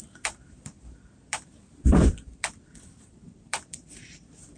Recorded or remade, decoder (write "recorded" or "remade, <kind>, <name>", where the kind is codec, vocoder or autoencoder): remade, vocoder, BigVGAN v2